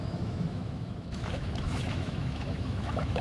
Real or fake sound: fake